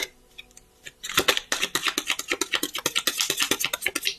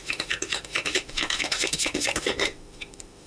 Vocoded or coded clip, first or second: second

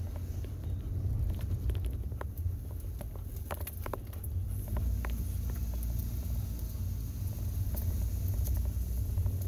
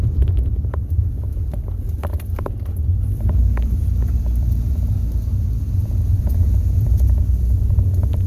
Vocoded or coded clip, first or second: second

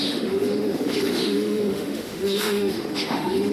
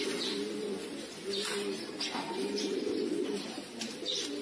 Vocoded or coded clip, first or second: first